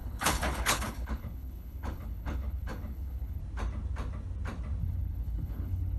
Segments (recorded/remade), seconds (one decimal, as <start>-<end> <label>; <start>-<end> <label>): 0.0-3.4 remade; 3.4-4.8 recorded; 4.8-6.0 remade